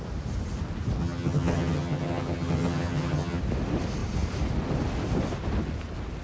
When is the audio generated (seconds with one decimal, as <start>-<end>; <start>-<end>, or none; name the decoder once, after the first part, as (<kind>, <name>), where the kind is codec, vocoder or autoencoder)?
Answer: 1.0-3.4 (vocoder, HiFi-GAN)